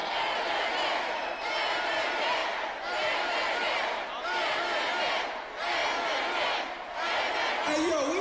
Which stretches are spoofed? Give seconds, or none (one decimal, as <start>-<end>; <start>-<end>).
none